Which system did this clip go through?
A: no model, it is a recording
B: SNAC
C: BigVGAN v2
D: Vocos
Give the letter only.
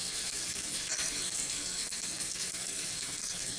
B